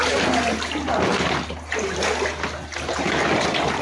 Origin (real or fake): real